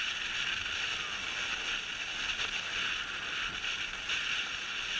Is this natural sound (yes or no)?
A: yes